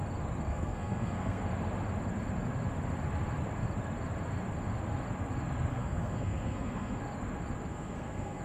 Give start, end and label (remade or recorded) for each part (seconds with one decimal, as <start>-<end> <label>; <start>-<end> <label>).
0.0-0.5 recorded; 0.5-1.4 remade; 1.4-5.7 recorded; 5.7-7.0 remade; 7.0-7.7 recorded; 7.7-8.4 remade